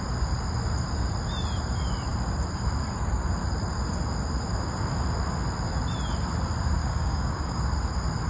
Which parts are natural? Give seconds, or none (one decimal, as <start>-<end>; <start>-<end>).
0.0-6.8; 7.6-8.3